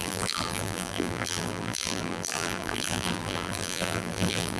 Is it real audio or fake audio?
fake